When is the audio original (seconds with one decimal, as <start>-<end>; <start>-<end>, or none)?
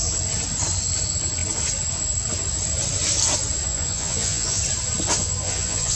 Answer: 0.0-3.7; 4.6-5.2